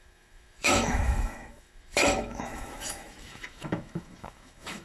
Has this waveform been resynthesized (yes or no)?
yes